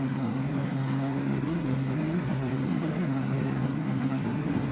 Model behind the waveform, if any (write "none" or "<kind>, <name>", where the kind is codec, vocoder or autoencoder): codec, SNAC